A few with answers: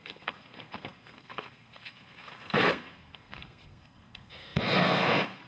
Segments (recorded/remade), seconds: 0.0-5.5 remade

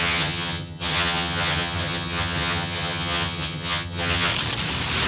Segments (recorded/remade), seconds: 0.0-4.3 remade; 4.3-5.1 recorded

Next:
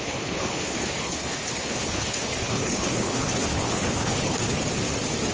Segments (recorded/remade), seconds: 0.0-4.6 remade; 4.6-5.3 recorded